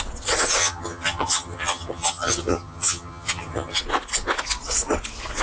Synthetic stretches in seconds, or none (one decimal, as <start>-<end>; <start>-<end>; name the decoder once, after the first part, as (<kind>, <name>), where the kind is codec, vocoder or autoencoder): 0.6-3.8 (vocoder, HiFi-GAN)